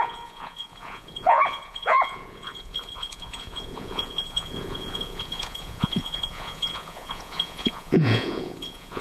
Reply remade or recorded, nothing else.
remade